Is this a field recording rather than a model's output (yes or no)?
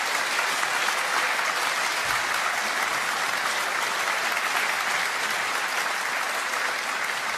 yes